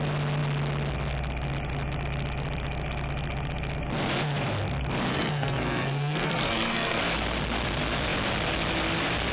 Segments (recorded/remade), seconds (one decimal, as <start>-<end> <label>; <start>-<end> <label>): 0.0-5.1 recorded; 5.1-7.0 remade; 7.0-9.3 recorded